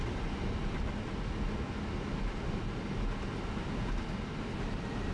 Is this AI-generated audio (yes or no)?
no